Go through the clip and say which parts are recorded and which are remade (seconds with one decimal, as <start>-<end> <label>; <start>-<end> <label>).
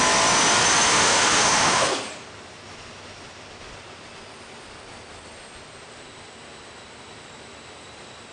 0.0-0.9 recorded; 0.9-1.9 remade; 1.9-8.3 recorded